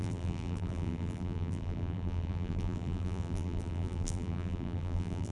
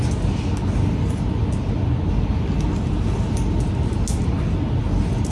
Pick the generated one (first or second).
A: first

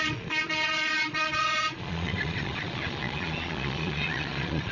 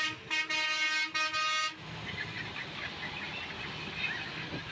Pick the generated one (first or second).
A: first